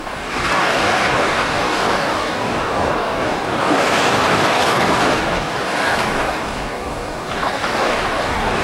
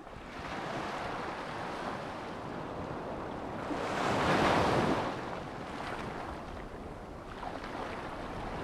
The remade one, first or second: first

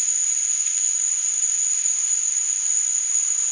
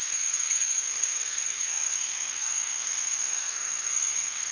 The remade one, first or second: second